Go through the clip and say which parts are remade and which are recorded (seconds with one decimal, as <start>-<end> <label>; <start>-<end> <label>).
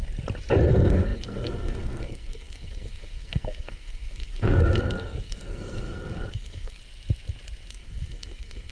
0.0-0.7 recorded; 0.7-6.8 remade; 6.8-7.7 recorded; 7.7-8.7 remade